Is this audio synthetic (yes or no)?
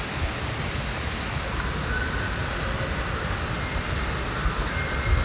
no